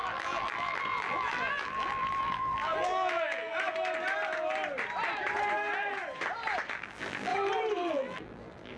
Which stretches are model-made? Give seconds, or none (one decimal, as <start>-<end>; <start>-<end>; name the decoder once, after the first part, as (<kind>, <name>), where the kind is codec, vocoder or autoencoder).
0.0-3.5 (vocoder, BigVGAN v2); 6.7-7.3; 7.9-8.8